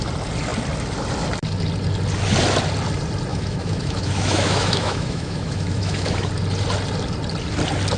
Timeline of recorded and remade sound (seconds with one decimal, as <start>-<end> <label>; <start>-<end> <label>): 0.0-3.3 recorded; 3.3-6.3 remade; 6.3-8.0 recorded